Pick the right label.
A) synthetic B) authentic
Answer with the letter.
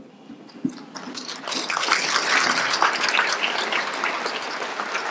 B